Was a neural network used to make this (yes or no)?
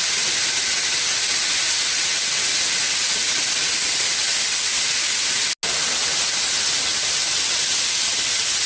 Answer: no